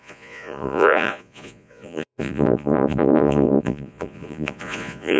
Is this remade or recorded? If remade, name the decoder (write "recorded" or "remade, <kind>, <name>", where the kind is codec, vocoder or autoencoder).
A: remade, vocoder, Vocos